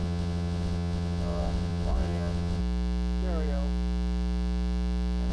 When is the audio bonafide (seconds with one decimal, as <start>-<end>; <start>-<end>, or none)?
2.6-5.3